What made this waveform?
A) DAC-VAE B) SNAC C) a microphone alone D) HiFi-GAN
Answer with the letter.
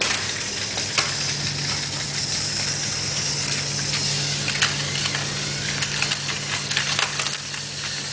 C